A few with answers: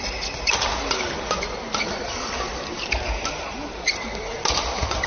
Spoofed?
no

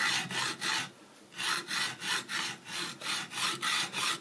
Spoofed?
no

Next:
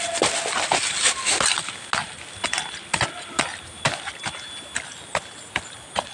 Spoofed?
no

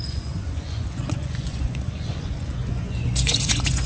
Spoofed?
yes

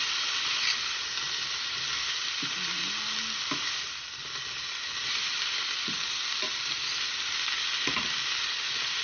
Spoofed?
no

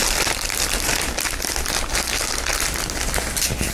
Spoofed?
no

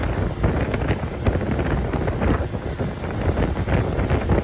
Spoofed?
no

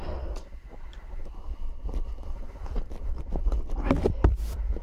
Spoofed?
no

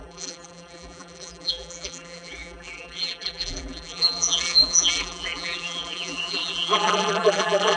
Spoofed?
yes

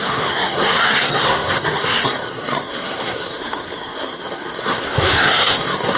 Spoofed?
yes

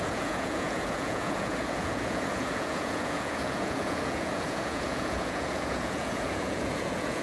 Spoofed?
yes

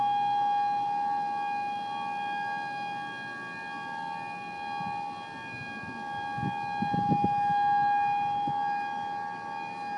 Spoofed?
no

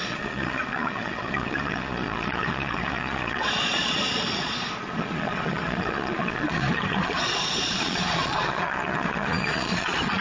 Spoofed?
yes